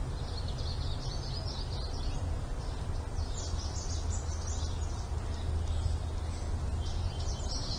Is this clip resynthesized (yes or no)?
no